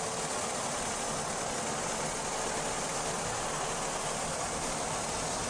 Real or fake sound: real